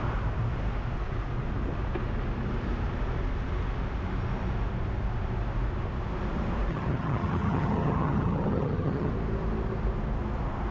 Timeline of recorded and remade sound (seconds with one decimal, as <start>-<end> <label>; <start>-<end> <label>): 0.0-6.7 recorded; 6.7-9.1 remade; 9.1-10.7 recorded